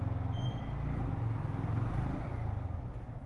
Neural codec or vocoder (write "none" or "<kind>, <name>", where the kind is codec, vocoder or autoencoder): none